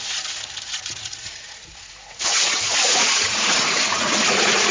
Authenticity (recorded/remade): remade